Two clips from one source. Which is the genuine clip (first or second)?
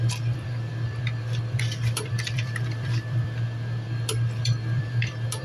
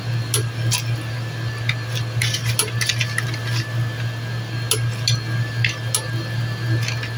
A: second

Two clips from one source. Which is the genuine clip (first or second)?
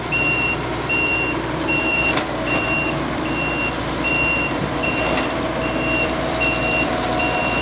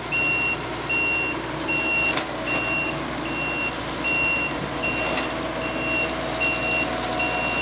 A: second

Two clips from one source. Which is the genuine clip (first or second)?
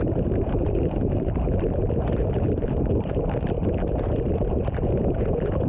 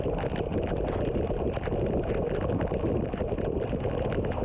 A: second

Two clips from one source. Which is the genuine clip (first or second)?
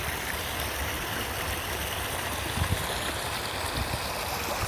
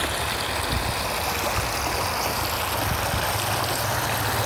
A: second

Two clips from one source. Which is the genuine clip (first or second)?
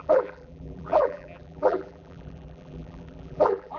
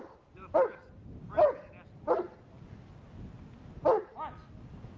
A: second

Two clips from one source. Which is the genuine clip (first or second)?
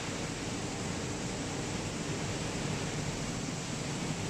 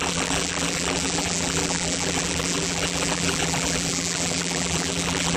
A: first